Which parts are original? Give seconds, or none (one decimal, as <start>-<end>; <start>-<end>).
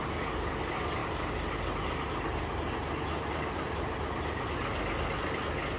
0.0-5.8